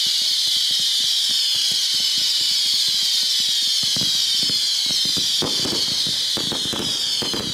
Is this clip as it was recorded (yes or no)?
no